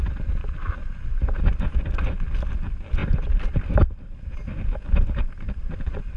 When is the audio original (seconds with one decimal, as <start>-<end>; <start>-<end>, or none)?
0.0-6.2